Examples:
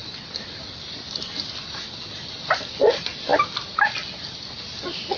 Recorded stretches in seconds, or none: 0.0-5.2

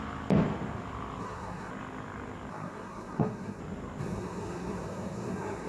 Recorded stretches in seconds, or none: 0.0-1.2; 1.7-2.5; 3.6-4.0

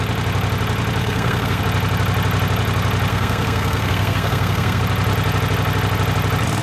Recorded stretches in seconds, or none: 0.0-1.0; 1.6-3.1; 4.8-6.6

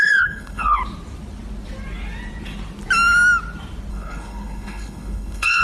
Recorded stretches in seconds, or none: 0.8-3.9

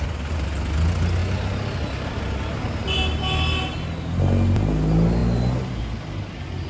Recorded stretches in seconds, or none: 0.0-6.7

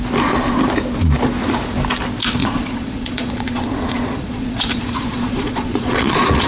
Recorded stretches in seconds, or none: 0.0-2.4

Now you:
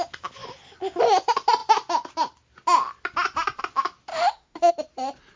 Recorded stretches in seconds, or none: 0.0-4.1; 4.7-5.4

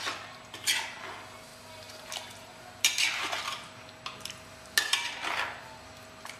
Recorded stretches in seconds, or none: 0.0-6.4